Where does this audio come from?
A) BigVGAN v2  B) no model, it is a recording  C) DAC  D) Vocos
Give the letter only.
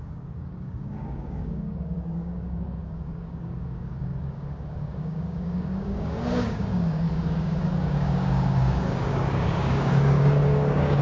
C